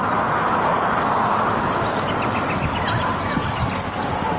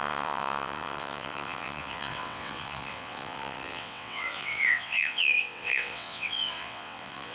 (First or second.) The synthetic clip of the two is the second